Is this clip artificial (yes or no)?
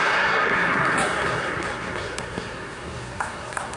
yes